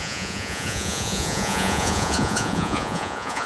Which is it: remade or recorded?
remade